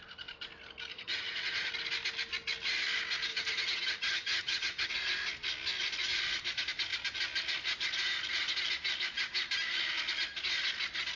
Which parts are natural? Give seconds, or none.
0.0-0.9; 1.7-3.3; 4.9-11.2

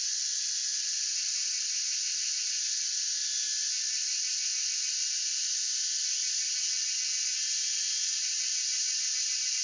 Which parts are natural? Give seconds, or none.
0.0-9.6

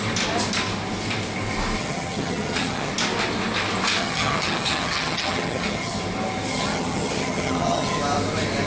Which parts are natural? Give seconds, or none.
0.0-1.8; 2.9-4.0; 6.0-6.5; 8.0-8.7

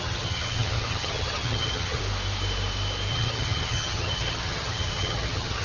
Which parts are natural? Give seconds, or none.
2.0-3.1

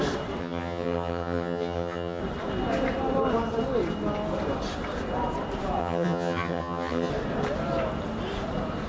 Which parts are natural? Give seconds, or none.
0.0-0.4; 2.2-5.8; 7.1-8.9

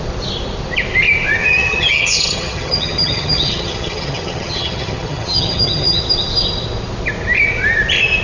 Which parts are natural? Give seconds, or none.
0.0-1.4; 6.0-8.2

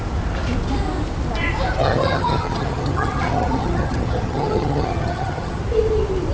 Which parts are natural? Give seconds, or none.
0.0-1.8; 5.6-6.3

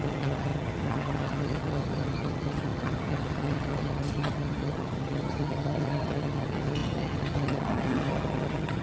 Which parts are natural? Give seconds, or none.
none